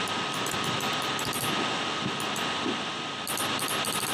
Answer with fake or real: real